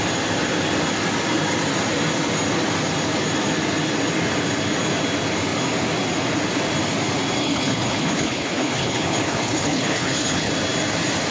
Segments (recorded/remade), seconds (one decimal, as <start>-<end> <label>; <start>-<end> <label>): 0.0-7.4 recorded; 7.4-10.5 remade; 10.5-11.3 recorded